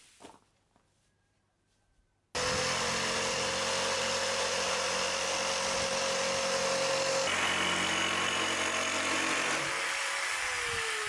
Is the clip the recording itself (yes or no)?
yes